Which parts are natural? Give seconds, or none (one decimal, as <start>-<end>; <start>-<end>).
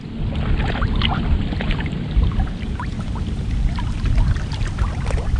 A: 0.0-1.1; 4.3-5.4